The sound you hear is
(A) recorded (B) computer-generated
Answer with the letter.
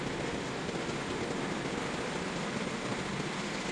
A